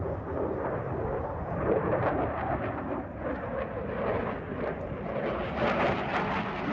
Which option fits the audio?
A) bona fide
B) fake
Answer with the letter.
A